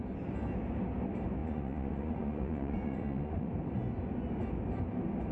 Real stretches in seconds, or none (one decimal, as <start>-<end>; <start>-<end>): 0.0-1.4; 3.5-5.3